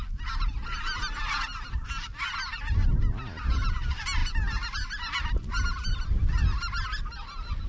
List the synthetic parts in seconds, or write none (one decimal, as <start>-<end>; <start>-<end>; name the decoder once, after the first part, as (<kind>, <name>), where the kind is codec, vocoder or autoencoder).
none